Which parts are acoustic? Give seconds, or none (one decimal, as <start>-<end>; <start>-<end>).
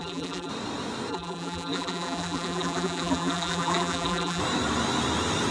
0.5-1.1; 4.4-5.5